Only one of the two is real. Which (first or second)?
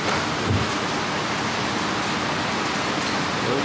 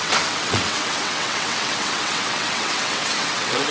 first